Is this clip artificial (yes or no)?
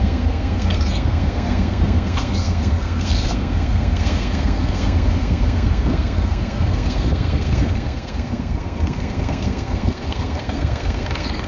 yes